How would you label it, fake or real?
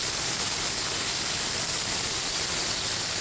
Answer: real